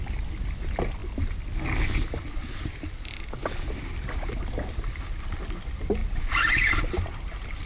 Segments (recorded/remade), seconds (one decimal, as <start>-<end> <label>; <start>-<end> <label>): 0.0-7.7 recorded